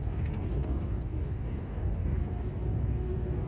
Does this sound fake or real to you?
fake